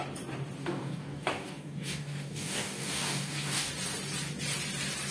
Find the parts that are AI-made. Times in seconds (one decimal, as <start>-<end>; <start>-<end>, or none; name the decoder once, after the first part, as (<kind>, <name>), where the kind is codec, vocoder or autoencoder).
0.6-3.7 (codec, DAC)